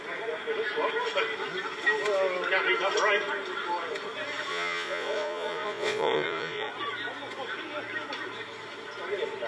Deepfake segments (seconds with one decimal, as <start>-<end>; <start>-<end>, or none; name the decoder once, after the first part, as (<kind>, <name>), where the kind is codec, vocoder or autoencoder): 4.5-6.7 (vocoder, Vocos)